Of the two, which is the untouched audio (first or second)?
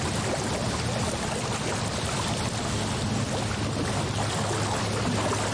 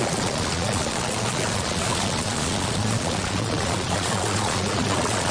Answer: first